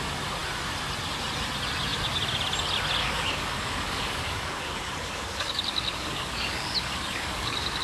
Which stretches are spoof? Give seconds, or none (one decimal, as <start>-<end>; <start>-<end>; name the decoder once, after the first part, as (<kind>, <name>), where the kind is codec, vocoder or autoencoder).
3.0-7.8 (codec, DAC)